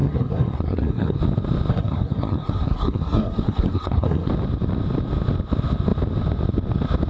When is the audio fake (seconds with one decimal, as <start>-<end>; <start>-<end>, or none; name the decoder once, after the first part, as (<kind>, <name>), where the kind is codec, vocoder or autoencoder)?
0.0-1.2 (codec, SNAC); 1.7-4.3